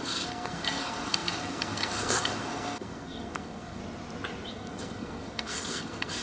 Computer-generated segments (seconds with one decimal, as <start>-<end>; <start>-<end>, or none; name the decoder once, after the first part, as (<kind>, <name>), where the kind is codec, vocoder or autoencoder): 0.0-3.8 (codec, SNAC); 4.5-6.2